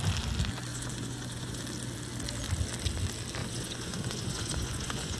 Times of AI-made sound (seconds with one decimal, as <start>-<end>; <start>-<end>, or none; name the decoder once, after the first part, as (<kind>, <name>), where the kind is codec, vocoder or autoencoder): 0.7-1.6 (vocoder, Vocos); 3.4-5.2